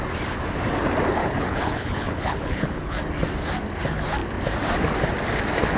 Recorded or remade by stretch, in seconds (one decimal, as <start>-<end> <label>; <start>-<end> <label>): 0.0-1.2 recorded; 1.2-3.0 remade; 3.0-5.8 recorded